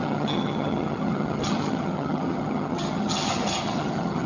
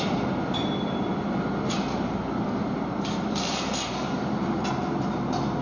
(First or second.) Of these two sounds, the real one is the second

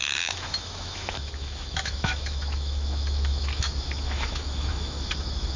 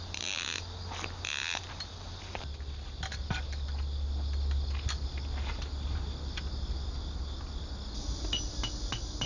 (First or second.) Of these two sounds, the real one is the second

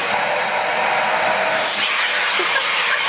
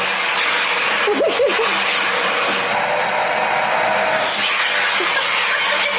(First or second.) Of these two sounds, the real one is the second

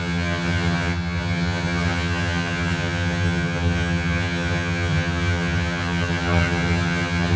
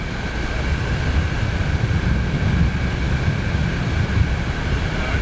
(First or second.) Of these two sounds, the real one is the second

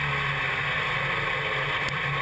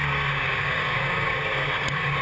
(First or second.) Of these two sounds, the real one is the first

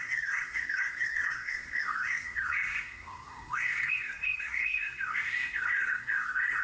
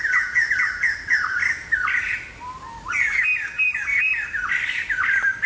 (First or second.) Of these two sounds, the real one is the second